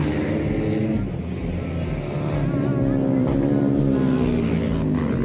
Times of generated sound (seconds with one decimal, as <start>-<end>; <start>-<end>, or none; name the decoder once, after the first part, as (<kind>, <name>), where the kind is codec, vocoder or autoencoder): none